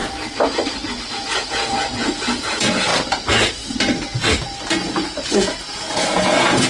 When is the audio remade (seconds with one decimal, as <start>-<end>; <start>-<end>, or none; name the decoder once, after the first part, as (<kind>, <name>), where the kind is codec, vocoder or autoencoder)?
1.1-2.9 (vocoder, Vocos); 4.7-6.7

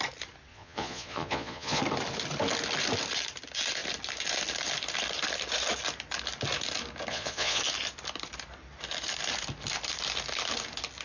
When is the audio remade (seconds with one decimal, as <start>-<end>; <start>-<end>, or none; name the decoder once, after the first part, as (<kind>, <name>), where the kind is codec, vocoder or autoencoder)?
0.5-1.8 (vocoder, Vocos); 7.1-7.6

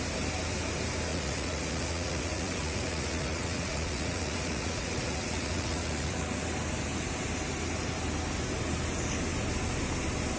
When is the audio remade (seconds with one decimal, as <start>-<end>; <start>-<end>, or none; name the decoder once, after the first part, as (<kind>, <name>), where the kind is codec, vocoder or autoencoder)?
1.1-6.4 (vocoder, Vocos)

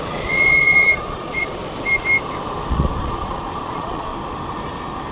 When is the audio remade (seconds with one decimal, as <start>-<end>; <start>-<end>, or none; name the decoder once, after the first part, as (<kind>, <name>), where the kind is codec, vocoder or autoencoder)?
0.0-1.6 (vocoder, Vocos); 2.7-4.1

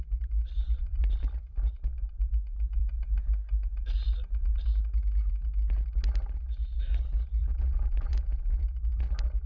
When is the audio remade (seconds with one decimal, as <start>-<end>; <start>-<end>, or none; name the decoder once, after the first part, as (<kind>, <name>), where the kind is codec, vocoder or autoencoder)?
7.4-9.1 (vocoder, Vocos)

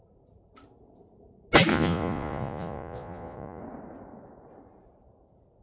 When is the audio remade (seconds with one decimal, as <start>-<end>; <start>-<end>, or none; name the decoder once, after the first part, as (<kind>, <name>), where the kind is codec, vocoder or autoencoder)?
1.7-3.6 (vocoder, Vocos)

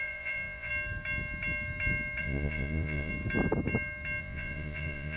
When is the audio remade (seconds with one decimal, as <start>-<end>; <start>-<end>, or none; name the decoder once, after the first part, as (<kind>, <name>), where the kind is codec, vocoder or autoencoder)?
0.0-0.7 (vocoder, Vocos); 2.2-3.1; 4.2-5.2